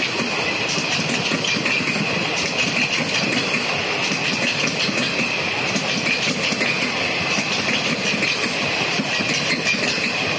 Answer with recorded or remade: recorded